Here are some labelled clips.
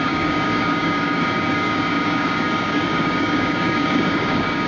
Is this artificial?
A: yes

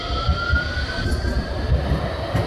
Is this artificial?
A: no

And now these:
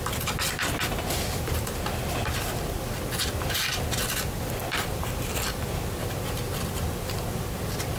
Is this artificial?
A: no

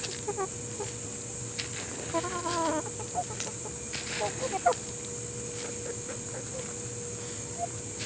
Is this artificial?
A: no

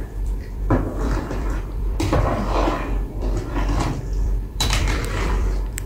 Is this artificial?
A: yes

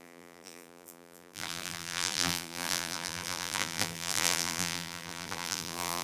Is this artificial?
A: yes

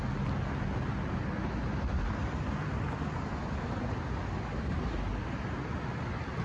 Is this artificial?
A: no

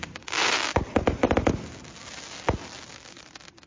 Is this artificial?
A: no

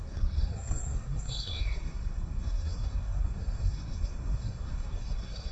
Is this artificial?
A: yes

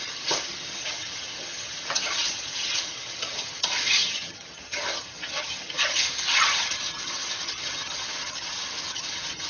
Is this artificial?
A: yes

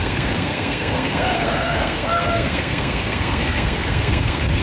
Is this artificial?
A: yes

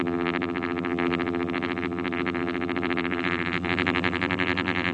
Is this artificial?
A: yes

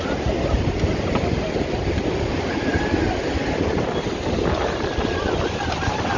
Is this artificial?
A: no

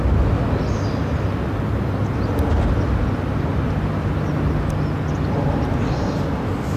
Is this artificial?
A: no